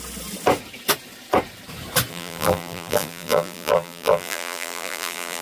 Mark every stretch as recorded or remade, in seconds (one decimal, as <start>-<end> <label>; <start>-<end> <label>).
0.0-2.1 recorded; 2.1-5.4 remade